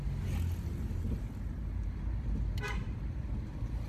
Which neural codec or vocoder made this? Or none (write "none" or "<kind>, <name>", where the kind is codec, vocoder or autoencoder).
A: none